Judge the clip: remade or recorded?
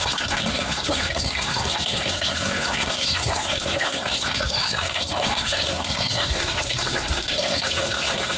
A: remade